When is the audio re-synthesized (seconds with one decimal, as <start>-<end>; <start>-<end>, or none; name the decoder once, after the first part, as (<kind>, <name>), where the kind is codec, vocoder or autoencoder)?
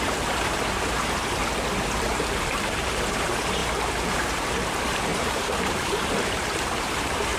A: 0.0-1.4 (vocoder, BigVGAN v2); 2.0-7.4